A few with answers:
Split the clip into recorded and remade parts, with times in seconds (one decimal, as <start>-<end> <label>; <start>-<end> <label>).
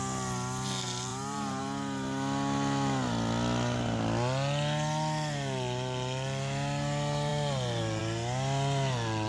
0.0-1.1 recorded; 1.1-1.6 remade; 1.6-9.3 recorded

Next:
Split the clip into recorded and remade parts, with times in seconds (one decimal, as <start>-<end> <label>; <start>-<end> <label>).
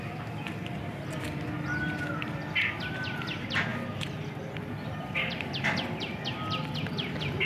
0.0-3.7 recorded; 3.7-7.5 remade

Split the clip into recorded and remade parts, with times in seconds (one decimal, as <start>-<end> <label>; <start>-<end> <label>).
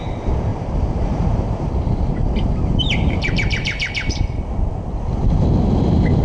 0.0-0.5 recorded; 0.5-4.2 remade; 4.2-6.2 recorded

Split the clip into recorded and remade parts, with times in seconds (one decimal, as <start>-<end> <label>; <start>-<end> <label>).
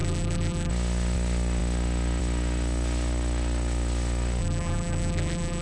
0.0-0.7 remade; 0.7-4.4 recorded; 4.4-5.6 remade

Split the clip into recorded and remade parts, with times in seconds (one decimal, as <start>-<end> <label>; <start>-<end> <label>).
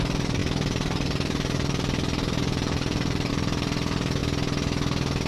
0.0-4.2 remade; 4.2-5.3 recorded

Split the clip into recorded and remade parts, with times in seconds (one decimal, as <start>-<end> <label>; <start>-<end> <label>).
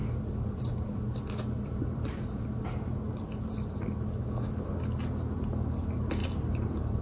0.0-4.2 remade; 4.2-6.2 recorded; 6.2-7.0 remade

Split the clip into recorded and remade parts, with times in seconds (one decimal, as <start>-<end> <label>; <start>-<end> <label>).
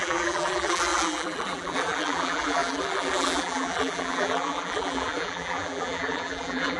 0.0-6.8 remade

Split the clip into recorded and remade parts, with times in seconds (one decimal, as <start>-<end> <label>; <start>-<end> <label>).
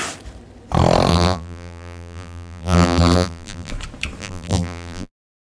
0.0-1.1 recorded; 1.1-3.7 remade; 3.7-4.2 recorded; 4.2-5.1 remade; 5.1-5.5 recorded